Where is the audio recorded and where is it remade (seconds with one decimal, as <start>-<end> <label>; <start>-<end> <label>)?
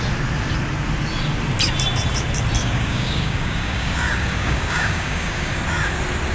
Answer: 0.0-2.6 recorded; 2.6-5.6 remade; 5.6-6.3 recorded